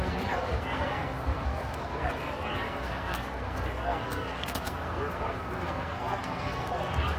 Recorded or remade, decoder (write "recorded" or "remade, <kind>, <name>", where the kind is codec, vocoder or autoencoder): remade, codec, SNAC